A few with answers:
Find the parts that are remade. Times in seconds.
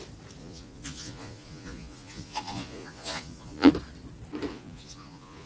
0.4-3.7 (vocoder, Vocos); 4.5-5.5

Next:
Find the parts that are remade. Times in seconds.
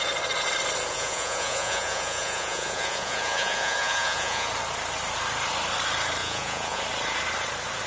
0.9-4.5 (vocoder, Vocos); 6.2-6.8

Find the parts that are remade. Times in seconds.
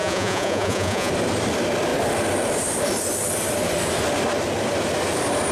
0.0-1.1 (vocoder, Vocos)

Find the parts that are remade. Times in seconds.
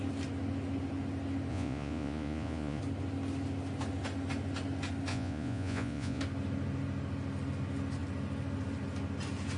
1.5-2.8 (vocoder, Vocos); 5.1-6.2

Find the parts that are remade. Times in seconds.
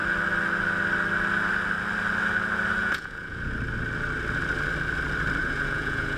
2.8-3.5 (vocoder, Vocos); 5.4-6.2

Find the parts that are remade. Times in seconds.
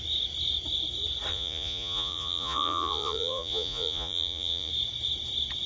1.3-4.7 (vocoder, Vocos)